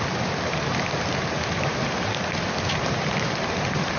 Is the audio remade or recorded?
recorded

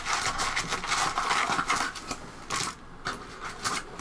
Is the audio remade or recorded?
recorded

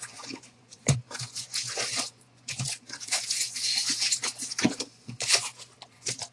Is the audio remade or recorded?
remade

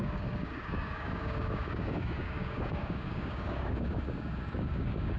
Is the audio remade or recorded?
remade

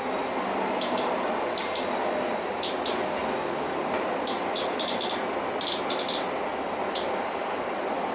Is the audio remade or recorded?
recorded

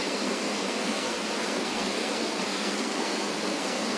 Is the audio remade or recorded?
remade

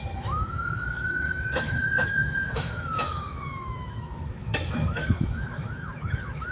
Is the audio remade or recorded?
remade